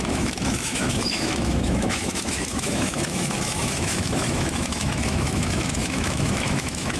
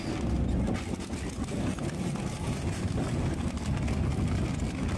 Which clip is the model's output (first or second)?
first